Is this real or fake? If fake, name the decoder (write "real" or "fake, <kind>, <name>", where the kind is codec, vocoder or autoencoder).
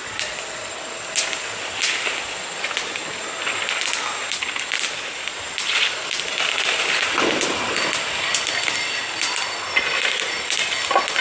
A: real